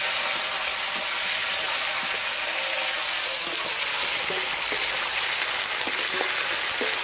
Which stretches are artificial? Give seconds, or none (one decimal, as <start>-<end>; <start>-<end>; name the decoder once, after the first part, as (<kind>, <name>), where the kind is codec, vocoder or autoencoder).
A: none